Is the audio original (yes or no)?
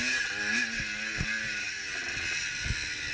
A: yes